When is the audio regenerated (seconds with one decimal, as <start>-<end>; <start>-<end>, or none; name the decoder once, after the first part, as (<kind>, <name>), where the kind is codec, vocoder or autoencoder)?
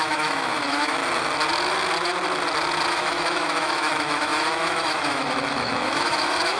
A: 0.0-1.0 (autoencoder, DAC-VAE); 2.9-6.6